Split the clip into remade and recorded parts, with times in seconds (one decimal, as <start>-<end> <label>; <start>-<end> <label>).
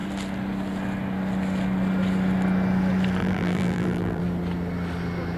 0.0-3.2 recorded; 3.2-4.2 remade; 4.2-5.4 recorded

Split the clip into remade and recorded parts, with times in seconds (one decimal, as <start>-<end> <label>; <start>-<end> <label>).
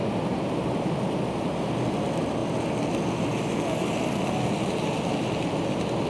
0.0-6.1 recorded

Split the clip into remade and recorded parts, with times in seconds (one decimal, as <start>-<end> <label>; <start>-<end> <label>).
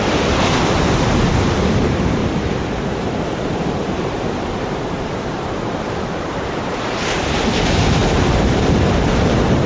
0.0-2.2 recorded; 2.2-6.7 remade; 6.7-8.0 recorded; 8.0-9.7 remade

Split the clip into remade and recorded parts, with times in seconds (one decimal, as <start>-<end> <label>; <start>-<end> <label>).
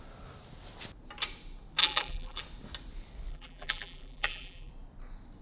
0.0-1.8 recorded; 1.8-2.4 remade; 2.4-3.3 recorded; 3.3-4.7 remade; 4.7-5.4 recorded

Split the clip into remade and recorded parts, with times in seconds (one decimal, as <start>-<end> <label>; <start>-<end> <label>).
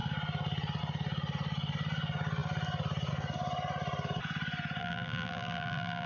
0.0-4.8 recorded; 4.8-6.1 remade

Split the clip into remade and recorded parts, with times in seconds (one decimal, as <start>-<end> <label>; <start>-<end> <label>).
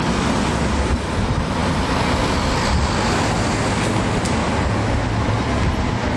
0.0-6.2 recorded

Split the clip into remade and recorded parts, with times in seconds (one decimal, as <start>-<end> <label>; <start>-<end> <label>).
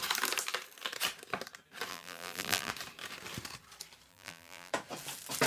0.0-1.9 recorded; 1.9-2.7 remade; 2.7-4.1 recorded; 4.1-4.7 remade; 4.7-5.5 recorded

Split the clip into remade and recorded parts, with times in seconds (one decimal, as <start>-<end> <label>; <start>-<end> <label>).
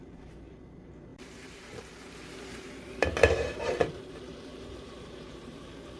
0.0-6.0 remade